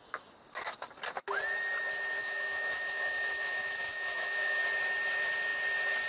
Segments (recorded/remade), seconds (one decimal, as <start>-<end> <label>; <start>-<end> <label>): 0.0-2.2 recorded; 2.2-4.6 remade; 4.6-6.1 recorded